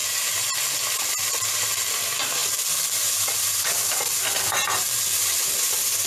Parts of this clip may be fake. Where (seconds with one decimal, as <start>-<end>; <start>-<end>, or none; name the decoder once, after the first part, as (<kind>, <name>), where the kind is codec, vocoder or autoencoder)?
none